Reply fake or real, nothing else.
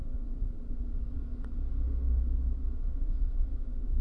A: real